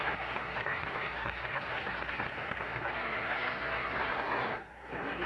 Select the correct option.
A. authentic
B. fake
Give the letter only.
B